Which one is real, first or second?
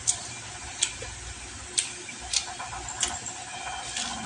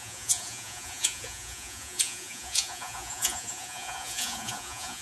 first